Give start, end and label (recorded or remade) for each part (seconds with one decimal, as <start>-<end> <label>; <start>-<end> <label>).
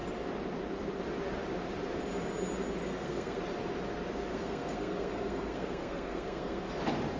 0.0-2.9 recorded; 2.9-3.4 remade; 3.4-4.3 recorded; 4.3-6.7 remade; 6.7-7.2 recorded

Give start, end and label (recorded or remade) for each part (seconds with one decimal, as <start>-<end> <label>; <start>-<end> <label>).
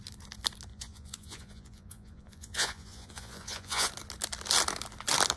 0.0-0.7 recorded; 0.7-3.9 remade; 3.9-5.4 recorded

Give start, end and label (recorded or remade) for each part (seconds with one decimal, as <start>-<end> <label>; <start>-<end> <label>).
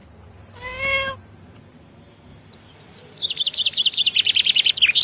0.0-1.6 remade; 1.6-2.3 recorded; 2.3-3.4 remade; 3.4-5.0 recorded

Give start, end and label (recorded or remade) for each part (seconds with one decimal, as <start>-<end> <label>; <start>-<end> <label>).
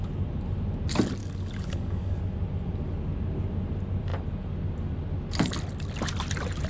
0.0-1.2 recorded; 1.2-2.2 remade; 2.2-6.7 recorded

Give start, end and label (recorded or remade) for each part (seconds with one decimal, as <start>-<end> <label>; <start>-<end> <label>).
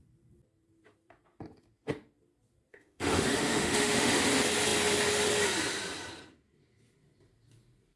0.0-2.7 recorded; 2.7-4.2 remade; 4.2-8.0 recorded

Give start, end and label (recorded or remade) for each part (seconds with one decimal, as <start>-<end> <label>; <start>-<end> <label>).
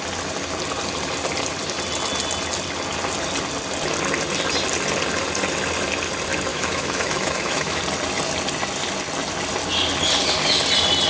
0.0-6.5 recorded; 6.5-7.8 remade; 7.8-11.1 recorded